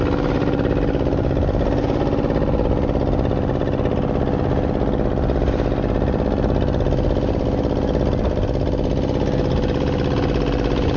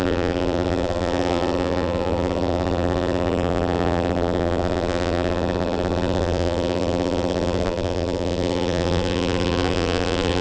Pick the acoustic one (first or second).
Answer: first